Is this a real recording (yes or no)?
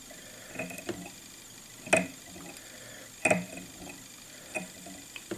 yes